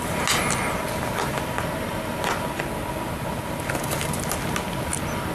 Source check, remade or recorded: recorded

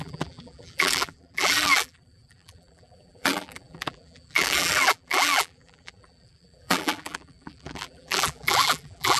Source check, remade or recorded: remade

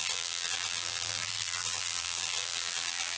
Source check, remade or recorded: remade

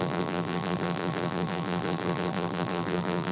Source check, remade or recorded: remade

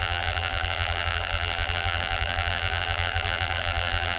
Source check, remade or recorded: remade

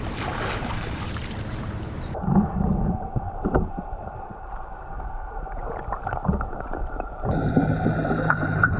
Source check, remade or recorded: remade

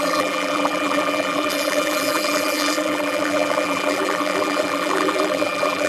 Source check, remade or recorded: remade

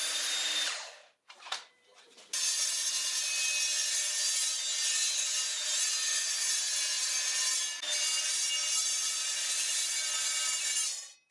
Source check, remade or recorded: recorded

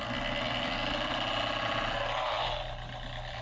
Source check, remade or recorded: recorded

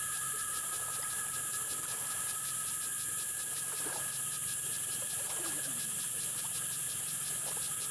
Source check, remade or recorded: remade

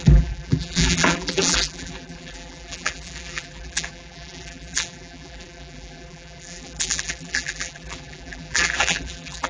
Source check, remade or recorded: remade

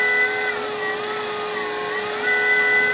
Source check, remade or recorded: recorded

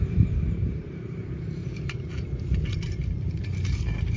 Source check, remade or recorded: remade